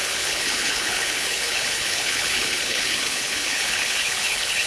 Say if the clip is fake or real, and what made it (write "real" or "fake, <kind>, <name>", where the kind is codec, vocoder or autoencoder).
fake, codec, HILCodec